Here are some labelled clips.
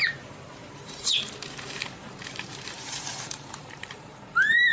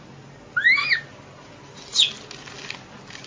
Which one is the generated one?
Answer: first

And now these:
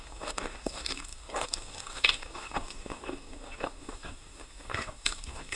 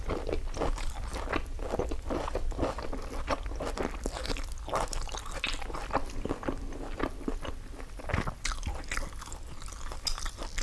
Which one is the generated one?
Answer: first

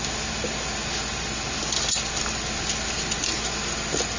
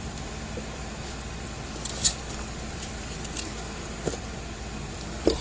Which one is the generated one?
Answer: second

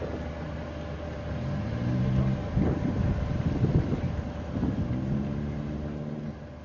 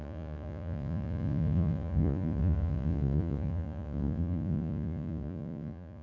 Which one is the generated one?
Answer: second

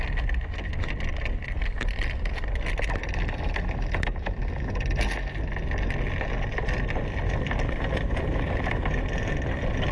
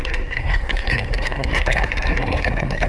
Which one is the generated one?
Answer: second